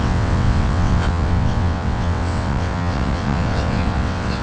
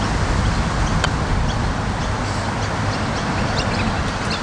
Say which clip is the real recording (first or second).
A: second